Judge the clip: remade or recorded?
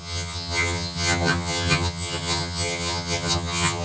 remade